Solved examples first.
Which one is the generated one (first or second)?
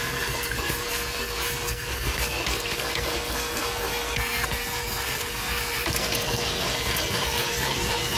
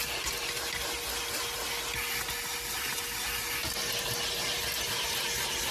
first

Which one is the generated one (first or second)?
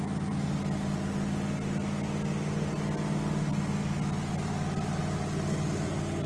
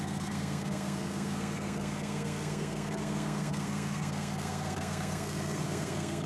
second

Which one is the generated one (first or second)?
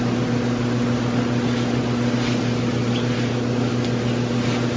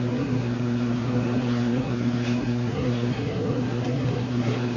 second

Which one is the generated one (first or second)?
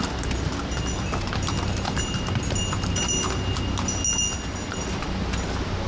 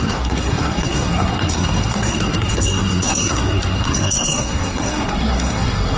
second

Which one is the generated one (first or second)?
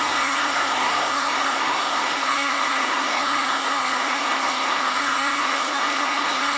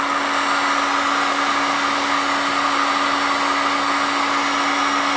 first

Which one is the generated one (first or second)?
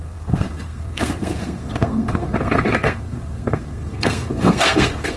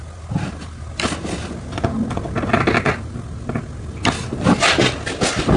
first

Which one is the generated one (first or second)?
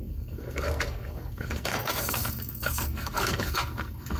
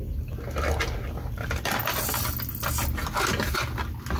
first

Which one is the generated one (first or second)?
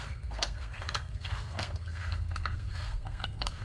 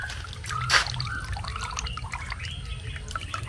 first